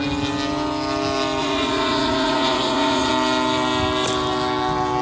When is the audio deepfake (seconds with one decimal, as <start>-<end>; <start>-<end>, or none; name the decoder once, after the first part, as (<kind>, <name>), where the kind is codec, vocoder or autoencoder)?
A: 1.4-3.1 (vocoder, Vocos)